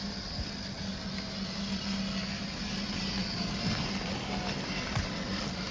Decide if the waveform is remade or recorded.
recorded